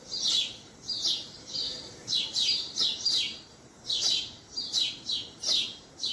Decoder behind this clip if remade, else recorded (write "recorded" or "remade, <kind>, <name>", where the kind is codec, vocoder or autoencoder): remade, vocoder, BigVGAN v2